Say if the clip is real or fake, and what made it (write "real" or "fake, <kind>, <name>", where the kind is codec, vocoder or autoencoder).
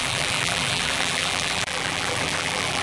fake, vocoder, BigVGAN v2